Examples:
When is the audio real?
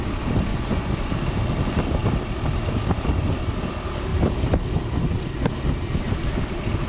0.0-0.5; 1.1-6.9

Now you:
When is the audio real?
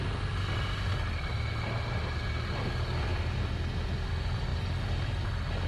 0.0-5.7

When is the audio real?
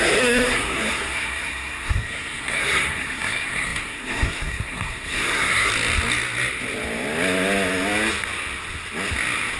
5.7-9.6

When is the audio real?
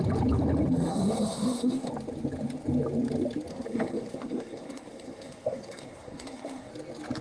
0.0-0.9; 1.9-3.5; 6.7-7.2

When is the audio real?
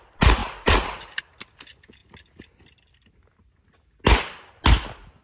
0.0-0.4; 1.2-5.2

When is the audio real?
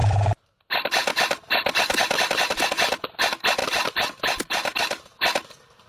0.5-3.6; 5.2-5.9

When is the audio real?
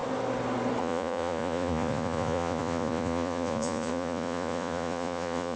0.0-0.8